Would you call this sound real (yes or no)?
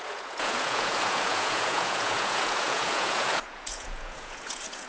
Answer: no